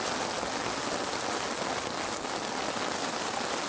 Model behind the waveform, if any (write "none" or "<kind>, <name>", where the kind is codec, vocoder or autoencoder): none